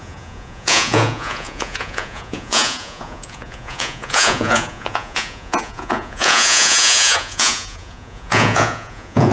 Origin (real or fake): fake